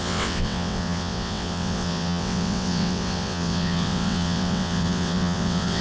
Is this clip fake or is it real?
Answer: fake